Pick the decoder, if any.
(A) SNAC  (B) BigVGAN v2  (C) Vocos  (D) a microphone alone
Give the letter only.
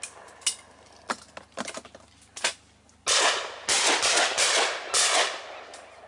D